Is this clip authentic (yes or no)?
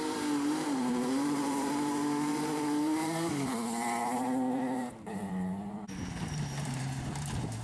no